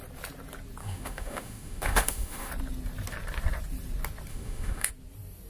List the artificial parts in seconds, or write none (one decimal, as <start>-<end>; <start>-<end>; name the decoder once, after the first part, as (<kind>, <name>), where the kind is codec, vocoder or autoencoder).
0.8-2.5 (autoencoder, DAC-VAE); 4.3-4.9